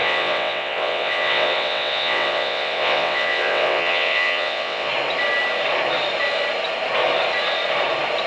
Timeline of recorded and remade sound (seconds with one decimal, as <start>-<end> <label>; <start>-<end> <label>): 0.0-4.9 remade; 4.9-8.3 recorded